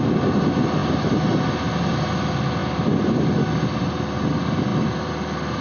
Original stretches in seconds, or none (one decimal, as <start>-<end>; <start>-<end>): 0.0-5.6